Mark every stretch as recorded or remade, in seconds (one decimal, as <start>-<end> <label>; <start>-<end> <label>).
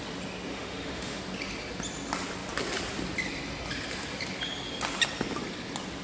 0.0-0.5 recorded; 0.5-1.2 remade; 1.2-6.0 recorded